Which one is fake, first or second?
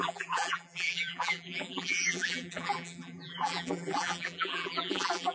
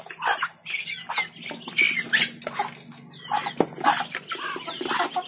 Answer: first